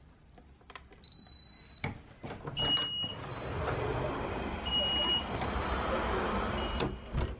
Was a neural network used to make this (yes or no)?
no